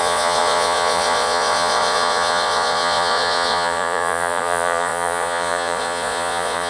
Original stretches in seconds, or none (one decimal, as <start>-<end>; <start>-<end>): none